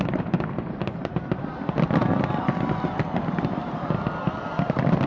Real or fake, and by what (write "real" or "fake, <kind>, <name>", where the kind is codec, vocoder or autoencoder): fake, vocoder, BigVGAN v2